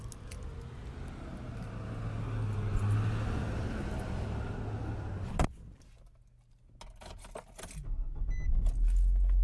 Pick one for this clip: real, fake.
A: real